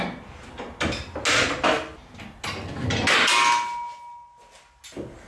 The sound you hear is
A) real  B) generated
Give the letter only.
A